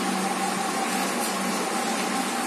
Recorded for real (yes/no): yes